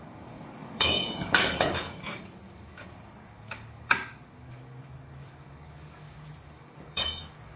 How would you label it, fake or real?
fake